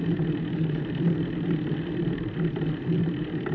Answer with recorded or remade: recorded